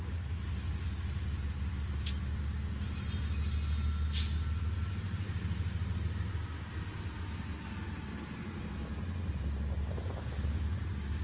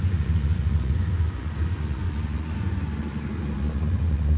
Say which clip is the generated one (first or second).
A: second